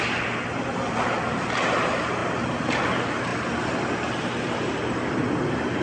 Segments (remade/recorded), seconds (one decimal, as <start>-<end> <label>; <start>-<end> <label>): 0.0-5.8 recorded